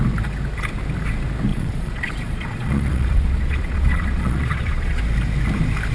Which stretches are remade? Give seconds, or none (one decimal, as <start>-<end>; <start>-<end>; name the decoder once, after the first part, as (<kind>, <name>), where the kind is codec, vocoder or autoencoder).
1.5-5.0 (vocoder, Vocos)